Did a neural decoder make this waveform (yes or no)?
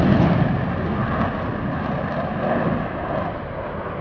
no